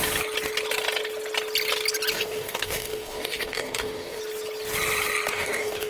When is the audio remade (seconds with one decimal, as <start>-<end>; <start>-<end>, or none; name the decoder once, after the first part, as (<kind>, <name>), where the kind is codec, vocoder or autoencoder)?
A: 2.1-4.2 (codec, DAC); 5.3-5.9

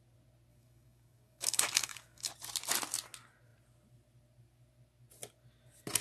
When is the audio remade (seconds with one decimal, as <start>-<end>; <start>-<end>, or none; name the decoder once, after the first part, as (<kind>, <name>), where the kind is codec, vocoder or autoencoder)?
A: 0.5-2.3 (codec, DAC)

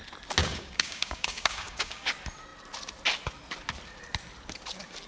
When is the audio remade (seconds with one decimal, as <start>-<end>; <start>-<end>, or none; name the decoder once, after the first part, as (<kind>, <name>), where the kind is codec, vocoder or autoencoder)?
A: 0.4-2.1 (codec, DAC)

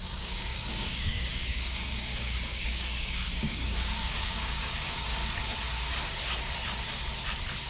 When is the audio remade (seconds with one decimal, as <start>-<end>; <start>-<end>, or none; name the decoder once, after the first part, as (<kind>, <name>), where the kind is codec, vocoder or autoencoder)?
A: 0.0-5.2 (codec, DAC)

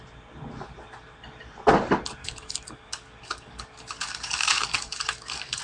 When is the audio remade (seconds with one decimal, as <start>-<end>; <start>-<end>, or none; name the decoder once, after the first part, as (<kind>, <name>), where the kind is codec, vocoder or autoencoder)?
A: 2.2-5.6 (codec, DAC)

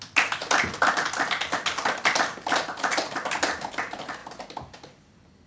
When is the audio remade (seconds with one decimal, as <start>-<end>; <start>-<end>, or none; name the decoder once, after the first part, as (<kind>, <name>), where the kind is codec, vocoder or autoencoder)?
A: none

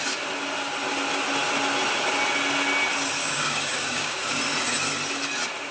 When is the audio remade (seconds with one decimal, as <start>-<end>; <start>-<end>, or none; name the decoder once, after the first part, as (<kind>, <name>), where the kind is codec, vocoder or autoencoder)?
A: 3.2-4.4 (codec, DAC)

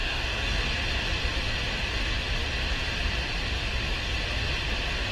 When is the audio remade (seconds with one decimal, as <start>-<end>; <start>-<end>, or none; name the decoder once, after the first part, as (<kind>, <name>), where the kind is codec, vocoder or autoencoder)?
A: 0.0-0.6 (codec, DAC)